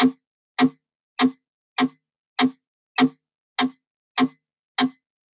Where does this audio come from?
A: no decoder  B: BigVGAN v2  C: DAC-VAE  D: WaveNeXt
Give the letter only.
A